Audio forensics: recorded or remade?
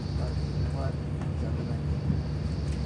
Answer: recorded